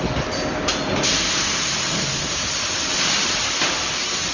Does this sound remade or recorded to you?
recorded